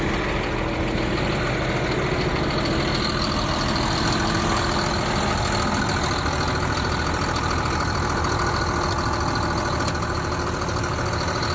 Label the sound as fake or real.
real